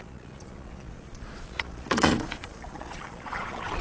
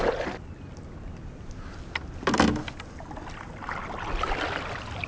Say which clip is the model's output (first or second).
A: first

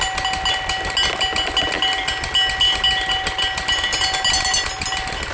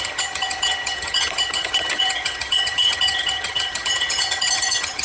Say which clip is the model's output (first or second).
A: second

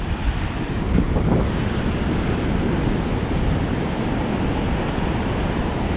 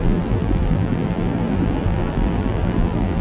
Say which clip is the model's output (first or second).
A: second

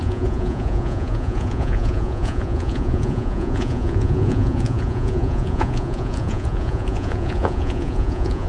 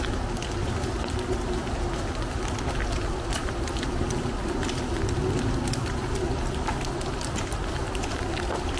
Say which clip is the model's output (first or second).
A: first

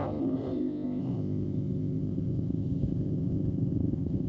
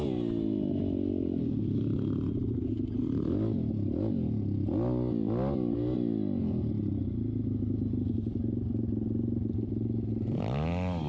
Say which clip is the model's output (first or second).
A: first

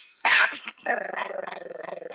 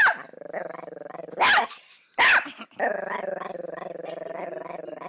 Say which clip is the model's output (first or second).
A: first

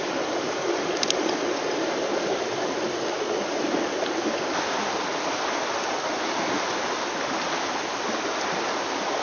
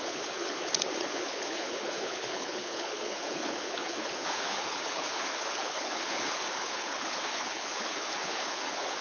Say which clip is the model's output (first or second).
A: second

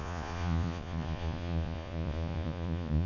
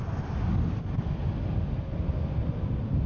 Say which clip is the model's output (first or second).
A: first